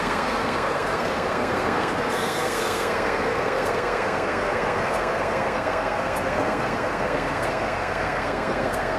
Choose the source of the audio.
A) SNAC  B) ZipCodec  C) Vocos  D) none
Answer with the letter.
A